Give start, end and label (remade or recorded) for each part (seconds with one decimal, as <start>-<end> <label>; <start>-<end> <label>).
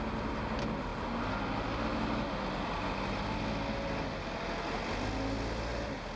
0.0-6.2 recorded